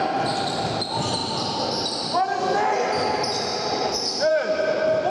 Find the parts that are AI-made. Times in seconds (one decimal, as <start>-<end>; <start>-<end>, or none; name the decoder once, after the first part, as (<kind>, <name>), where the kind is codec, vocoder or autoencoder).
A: none